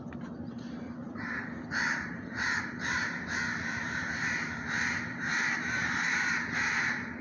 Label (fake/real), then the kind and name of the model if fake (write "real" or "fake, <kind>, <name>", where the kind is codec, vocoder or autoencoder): fake, vocoder, BigVGAN v2